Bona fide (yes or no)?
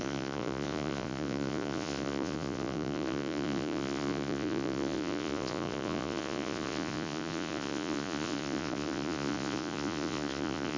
no